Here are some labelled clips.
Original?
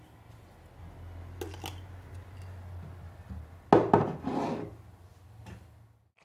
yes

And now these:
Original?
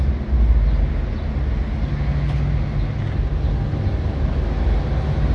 yes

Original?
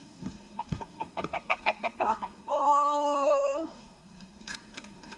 no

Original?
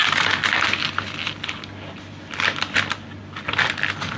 yes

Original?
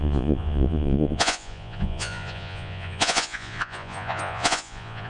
no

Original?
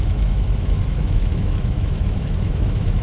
no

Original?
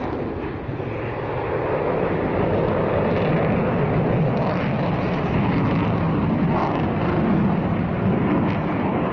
yes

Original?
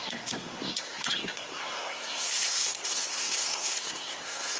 no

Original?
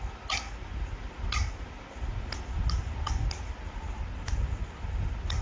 yes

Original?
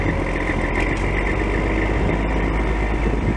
yes